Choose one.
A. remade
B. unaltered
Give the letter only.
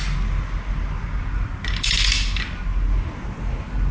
B